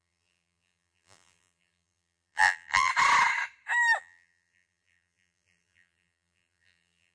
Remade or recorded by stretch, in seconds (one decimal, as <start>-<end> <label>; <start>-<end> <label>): 0.0-2.9 remade; 2.9-4.0 recorded; 4.0-7.1 remade